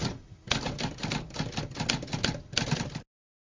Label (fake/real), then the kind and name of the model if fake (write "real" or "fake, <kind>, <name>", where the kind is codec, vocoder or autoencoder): real